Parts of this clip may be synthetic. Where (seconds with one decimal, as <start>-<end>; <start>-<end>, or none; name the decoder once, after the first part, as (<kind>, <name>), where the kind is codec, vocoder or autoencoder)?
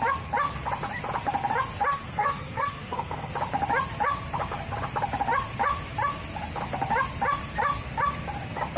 1.9-3.3 (codec, SNAC)